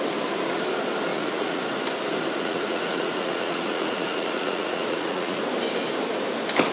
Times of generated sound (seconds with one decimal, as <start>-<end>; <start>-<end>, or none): 1.1-1.6; 2.4-5.4